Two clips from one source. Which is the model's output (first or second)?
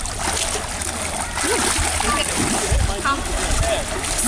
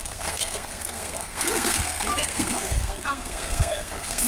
second